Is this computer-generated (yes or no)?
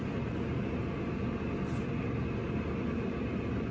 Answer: no